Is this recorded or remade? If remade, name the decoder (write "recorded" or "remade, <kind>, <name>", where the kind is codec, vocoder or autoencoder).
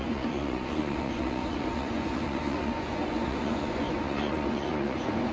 remade, vocoder, Vocos